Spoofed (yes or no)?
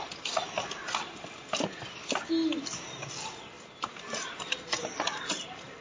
no